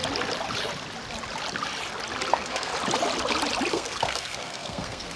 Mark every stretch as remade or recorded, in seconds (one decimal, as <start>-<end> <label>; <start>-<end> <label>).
0.0-2.3 recorded; 2.3-2.7 remade; 2.7-3.7 recorded; 3.7-5.2 remade